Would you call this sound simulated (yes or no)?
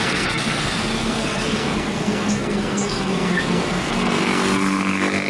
yes